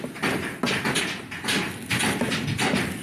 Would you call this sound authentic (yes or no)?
yes